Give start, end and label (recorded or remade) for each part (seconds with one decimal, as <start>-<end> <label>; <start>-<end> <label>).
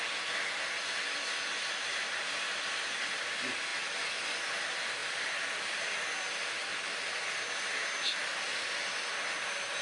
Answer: 0.0-9.8 recorded